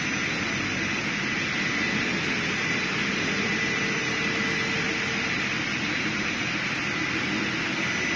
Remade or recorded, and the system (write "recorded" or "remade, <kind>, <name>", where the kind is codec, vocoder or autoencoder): recorded